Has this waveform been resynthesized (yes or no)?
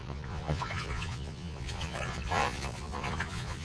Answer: yes